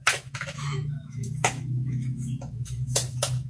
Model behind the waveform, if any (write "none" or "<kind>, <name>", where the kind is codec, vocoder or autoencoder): autoencoder, DAC-VAE